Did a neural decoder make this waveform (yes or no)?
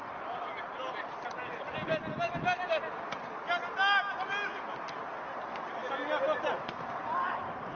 no